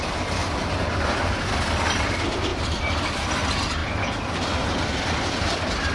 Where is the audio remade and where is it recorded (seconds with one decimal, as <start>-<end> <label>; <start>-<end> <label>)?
0.0-0.4 recorded; 0.4-1.3 remade; 1.3-5.9 recorded